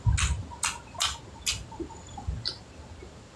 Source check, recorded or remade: recorded